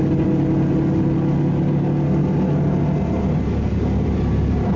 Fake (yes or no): no